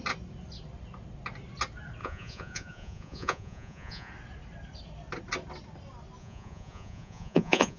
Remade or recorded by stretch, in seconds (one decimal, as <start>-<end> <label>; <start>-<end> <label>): 0.0-2.0 recorded; 2.0-4.1 remade; 4.1-6.2 recorded; 6.2-7.8 remade